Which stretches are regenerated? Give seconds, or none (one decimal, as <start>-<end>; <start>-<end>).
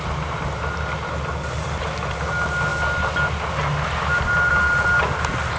none